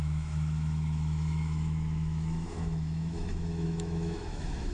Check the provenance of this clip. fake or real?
fake